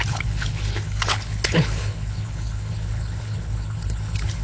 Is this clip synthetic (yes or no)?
yes